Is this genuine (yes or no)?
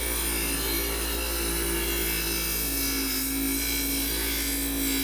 yes